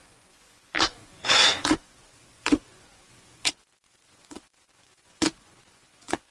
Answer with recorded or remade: remade